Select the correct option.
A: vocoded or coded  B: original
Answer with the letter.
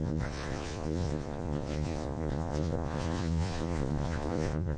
A